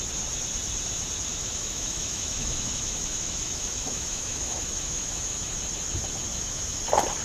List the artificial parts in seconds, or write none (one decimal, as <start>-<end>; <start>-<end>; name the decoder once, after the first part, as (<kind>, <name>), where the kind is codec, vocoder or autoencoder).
1.3-5.6 (autoencoder, DAC-VAE); 6.3-6.8